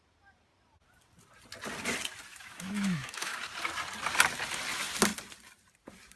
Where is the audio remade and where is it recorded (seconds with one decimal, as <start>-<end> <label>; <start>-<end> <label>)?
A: 0.0-2.3 recorded; 2.3-3.4 remade; 3.4-6.2 recorded